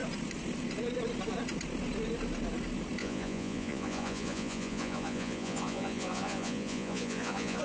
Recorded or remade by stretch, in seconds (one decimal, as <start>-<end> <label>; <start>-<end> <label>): 0.0-3.0 recorded; 3.0-7.6 remade